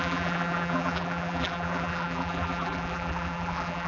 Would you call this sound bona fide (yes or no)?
no